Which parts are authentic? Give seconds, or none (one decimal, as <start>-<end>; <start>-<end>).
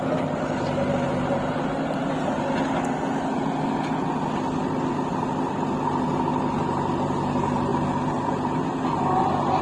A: 0.0-9.6